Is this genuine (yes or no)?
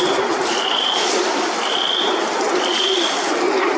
yes